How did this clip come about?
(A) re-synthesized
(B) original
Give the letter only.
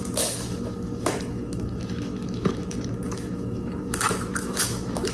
A